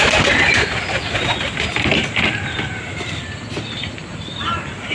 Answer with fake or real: real